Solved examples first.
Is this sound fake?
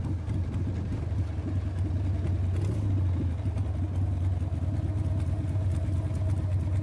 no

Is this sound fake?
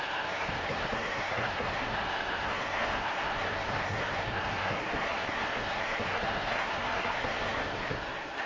yes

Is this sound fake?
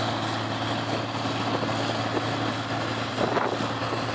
no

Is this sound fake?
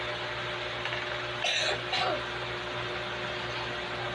no